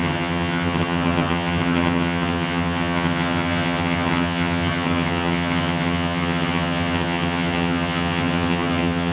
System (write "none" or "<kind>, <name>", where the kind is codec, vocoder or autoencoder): vocoder, HiFi-GAN